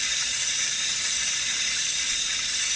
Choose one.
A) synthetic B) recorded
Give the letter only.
A